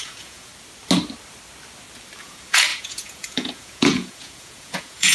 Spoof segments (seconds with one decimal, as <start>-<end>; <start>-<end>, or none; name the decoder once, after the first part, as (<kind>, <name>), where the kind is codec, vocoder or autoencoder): 0.0-0.5 (vocoder, Vocos); 2.2-5.1